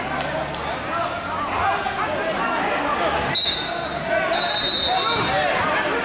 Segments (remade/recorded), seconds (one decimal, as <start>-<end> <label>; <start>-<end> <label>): 0.0-2.6 recorded; 2.6-3.3 remade; 3.3-6.0 recorded

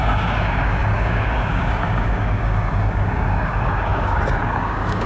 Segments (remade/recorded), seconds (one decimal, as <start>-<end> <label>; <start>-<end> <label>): 0.0-5.1 remade

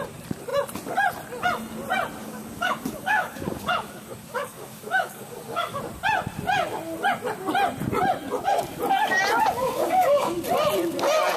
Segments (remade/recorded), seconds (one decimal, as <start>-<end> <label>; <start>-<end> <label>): 0.0-2.2 recorded; 2.2-5.8 remade; 5.8-9.6 recorded; 9.6-10.4 remade; 10.4-11.4 recorded

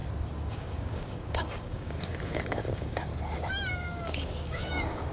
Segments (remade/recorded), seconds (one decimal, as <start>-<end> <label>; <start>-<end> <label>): 0.0-0.5 recorded; 0.5-3.1 remade; 3.1-3.7 recorded; 3.7-5.1 remade